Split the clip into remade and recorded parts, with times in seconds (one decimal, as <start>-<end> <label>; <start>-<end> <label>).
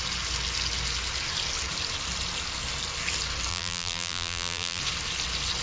0.0-3.5 recorded; 3.5-4.8 remade; 4.8-5.6 recorded